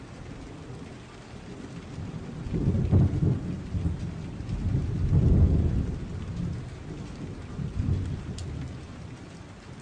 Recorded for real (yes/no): yes